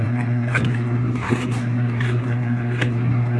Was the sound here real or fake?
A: fake